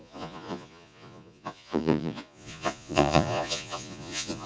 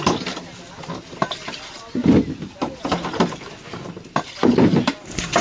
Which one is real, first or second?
second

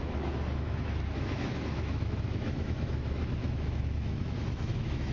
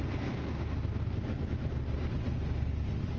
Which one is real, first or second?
second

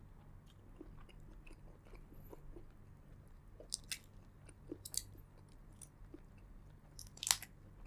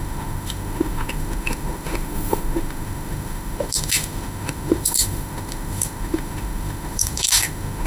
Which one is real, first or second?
first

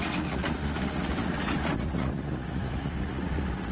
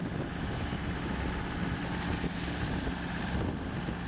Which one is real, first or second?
second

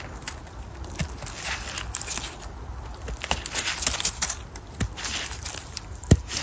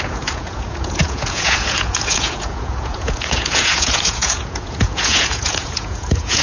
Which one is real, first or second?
first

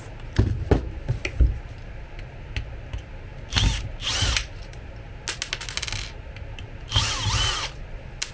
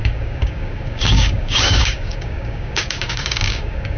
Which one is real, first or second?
first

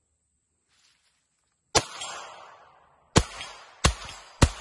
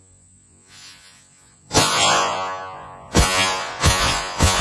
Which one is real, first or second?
first